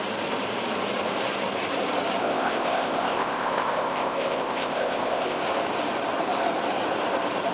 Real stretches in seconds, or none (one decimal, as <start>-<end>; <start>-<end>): 0.0-2.2; 5.4-7.5